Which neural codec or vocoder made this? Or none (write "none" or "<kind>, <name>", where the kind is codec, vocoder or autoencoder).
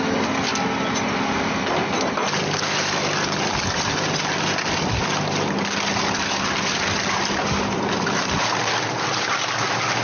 none